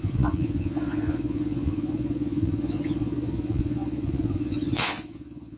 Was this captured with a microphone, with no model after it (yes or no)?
no